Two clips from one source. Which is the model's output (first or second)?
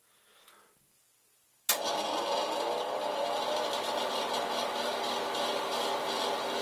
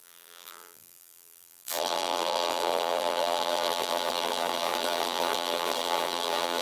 second